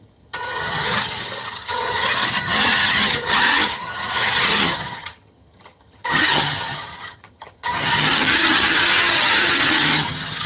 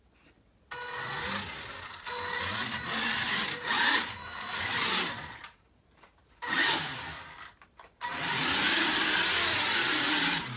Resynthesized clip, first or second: first